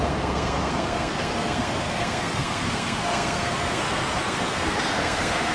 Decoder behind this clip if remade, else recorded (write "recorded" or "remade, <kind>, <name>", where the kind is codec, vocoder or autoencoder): remade, codec, SNAC